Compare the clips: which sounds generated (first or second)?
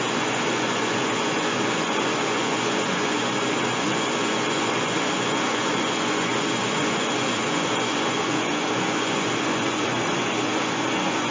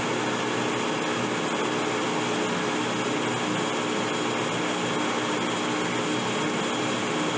first